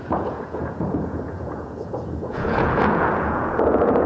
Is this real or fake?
fake